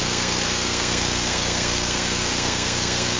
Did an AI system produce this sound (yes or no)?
yes